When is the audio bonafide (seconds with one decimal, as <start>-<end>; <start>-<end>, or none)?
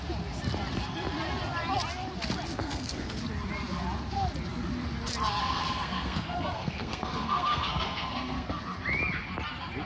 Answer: 0.0-2.6; 3.2-5.4; 8.5-9.9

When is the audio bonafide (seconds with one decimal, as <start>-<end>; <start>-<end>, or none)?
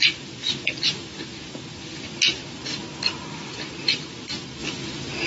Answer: 2.8-3.5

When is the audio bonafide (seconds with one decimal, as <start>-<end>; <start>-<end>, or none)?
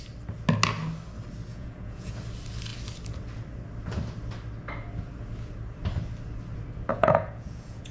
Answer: 0.0-1.5; 2.1-6.9